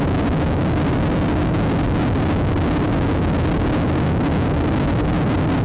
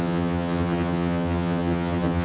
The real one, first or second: first